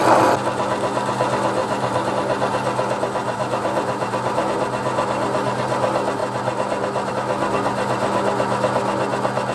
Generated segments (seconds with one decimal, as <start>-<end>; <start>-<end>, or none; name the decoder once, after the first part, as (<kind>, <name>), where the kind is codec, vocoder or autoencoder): 1.6-2.1 (vocoder, BigVGAN v2); 3.2-4.5